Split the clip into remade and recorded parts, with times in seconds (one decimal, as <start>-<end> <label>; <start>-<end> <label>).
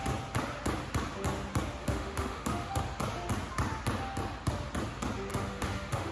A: 0.0-1.8 recorded; 1.8-2.8 remade; 2.8-5.3 recorded; 5.3-6.1 remade